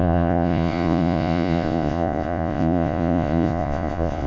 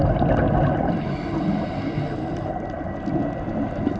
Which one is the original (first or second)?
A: second